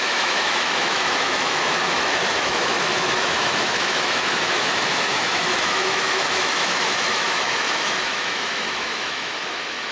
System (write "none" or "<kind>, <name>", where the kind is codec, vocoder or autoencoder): autoencoder, DAC-VAE